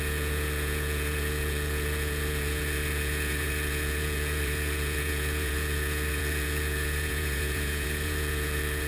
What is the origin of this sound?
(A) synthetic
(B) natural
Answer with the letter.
A